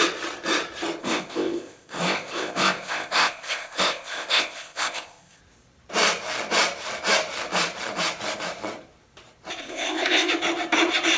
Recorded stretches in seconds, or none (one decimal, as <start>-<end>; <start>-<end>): 0.0-1.0; 5.4-9.6; 10.3-11.2